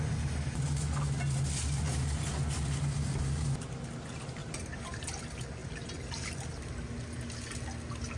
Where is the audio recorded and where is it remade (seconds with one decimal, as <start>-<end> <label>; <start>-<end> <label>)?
0.0-4.4 recorded; 4.4-5.0 remade; 5.0-5.6 recorded; 5.6-6.6 remade; 6.6-8.2 recorded